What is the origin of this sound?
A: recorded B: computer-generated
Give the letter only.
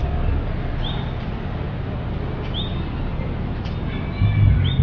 A